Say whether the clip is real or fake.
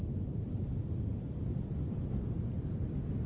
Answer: real